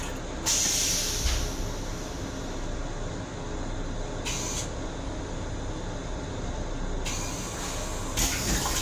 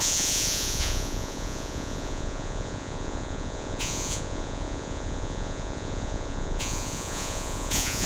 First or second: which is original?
first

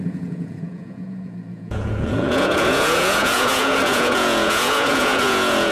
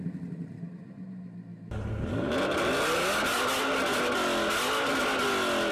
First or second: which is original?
second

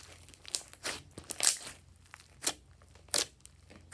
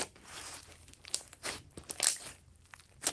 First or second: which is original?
first